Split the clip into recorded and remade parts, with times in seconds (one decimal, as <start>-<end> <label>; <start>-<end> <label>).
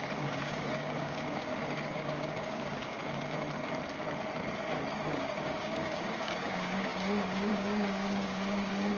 0.0-3.0 remade; 3.0-4.9 recorded; 4.9-9.0 remade